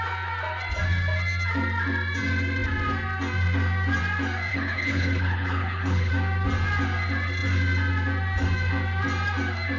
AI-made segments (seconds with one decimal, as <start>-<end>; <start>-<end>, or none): 4.5-6.1